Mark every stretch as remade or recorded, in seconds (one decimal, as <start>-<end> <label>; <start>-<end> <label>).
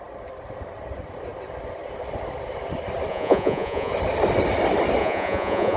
0.0-3.1 recorded; 3.1-3.9 remade; 3.9-5.0 recorded; 5.0-5.8 remade